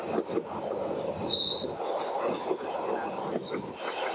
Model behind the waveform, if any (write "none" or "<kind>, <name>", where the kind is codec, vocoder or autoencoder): none